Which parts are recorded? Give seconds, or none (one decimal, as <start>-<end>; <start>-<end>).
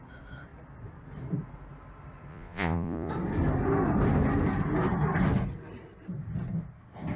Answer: 0.0-2.3; 3.1-7.2